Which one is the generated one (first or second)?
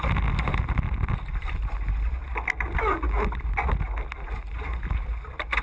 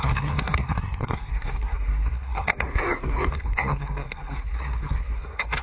second